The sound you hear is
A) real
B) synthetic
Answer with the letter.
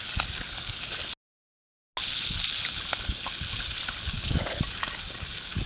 A